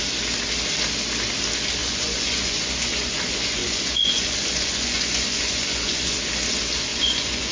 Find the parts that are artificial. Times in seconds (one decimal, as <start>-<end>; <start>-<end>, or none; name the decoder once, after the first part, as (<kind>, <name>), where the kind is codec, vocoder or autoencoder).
1.8-6.2 (vocoder, Vocos); 6.9-7.5